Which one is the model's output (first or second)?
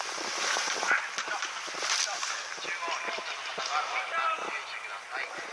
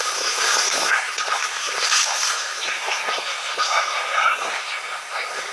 second